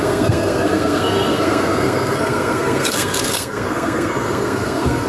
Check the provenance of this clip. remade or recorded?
remade